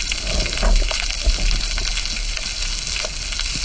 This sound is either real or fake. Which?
real